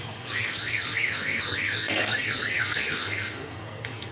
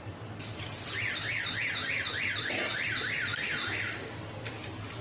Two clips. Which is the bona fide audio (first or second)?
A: second